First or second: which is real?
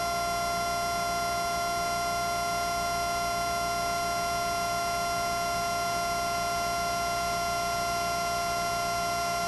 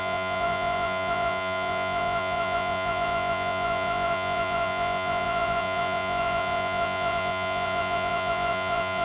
first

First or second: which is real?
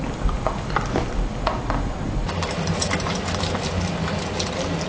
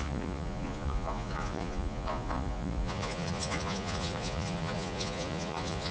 first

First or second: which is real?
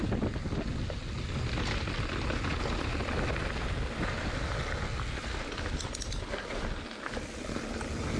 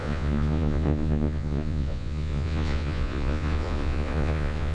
first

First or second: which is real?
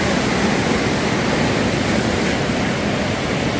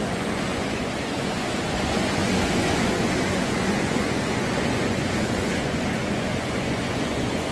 first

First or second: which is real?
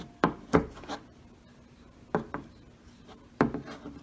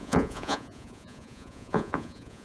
first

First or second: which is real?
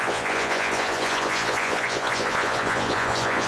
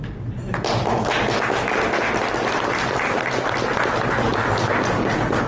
second